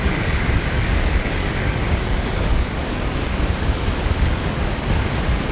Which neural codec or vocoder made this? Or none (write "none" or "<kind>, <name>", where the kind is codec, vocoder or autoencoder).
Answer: codec, DAC